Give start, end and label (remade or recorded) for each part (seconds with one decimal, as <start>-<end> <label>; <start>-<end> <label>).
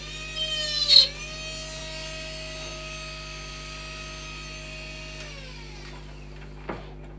0.0-7.2 recorded